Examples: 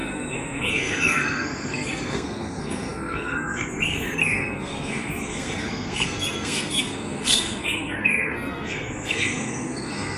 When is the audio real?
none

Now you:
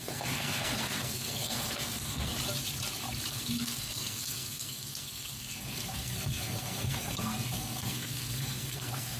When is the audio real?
2.3-3.3

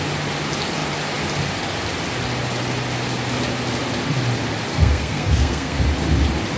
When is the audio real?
0.0-4.7; 5.8-6.6

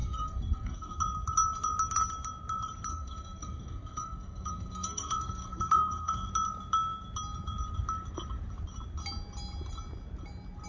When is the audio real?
1.0-2.9; 6.3-10.7

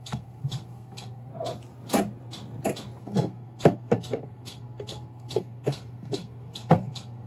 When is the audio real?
1.3-3.0

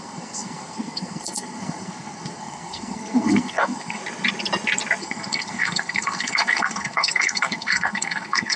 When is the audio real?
4.0-5.0

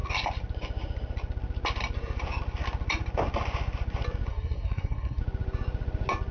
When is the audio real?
0.0-4.3; 5.2-6.3

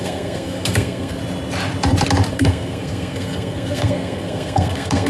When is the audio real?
1.2-2.3